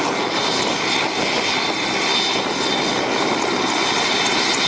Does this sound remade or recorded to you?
recorded